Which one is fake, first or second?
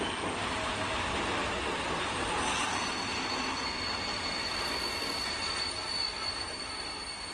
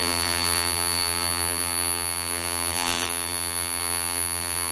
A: second